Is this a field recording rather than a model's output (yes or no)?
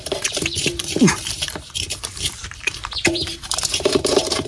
no